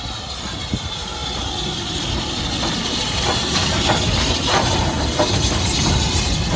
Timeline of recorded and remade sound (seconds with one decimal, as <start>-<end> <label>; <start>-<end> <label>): 0.0-1.2 recorded; 1.2-3.7 remade; 3.7-6.6 recorded

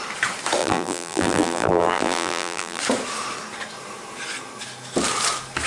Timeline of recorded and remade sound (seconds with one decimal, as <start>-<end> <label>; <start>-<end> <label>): 0.0-0.6 recorded; 0.6-2.8 remade; 2.8-5.7 recorded

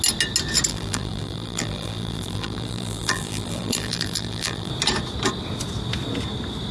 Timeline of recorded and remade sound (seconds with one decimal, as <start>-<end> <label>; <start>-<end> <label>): 0.0-0.7 recorded; 0.7-4.7 remade; 4.7-6.7 recorded